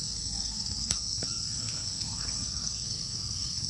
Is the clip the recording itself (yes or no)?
no